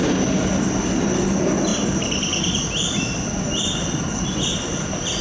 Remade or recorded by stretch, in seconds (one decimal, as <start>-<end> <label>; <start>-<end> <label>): 0.0-1.7 recorded; 1.7-3.1 remade; 3.1-5.2 recorded